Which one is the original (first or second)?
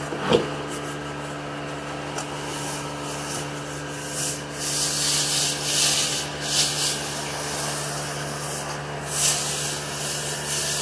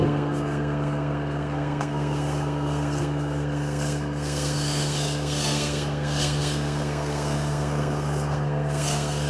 first